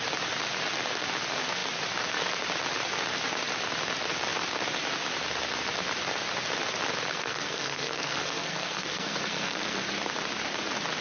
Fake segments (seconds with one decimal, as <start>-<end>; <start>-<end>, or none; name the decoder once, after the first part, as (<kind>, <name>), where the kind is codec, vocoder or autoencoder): 7.1-9.9 (codec, SNAC)